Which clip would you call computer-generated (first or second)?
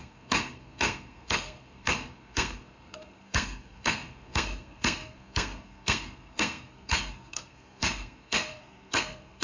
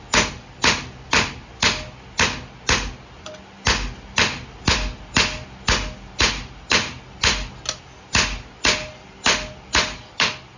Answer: first